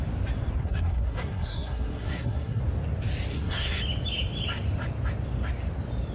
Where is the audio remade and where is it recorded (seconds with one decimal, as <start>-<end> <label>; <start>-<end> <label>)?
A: 0.0-0.6 recorded; 0.6-2.6 remade; 2.6-3.3 recorded; 3.3-3.8 remade; 3.8-6.1 recorded